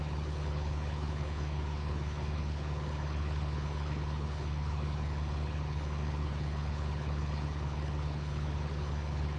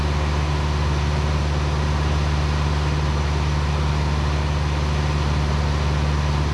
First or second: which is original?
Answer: second